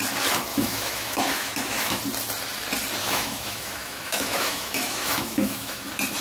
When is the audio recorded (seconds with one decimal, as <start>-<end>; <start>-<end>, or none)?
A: 0.0-0.5; 2.0-3.0; 5.8-6.2